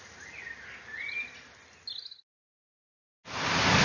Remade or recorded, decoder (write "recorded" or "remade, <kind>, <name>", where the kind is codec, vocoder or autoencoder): recorded